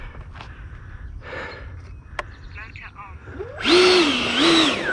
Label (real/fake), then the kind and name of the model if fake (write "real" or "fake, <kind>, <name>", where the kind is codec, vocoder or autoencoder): real